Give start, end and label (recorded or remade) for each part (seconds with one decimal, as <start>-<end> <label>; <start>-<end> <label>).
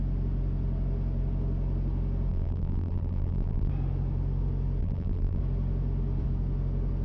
0.0-2.3 recorded; 2.3-3.7 remade; 3.7-4.8 recorded; 4.8-5.4 remade; 5.4-7.0 recorded